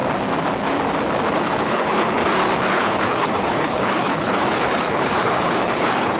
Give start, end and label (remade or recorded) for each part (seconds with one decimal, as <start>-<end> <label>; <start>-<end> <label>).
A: 0.0-1.3 recorded; 1.3-2.2 remade; 2.2-2.7 recorded; 2.7-6.2 remade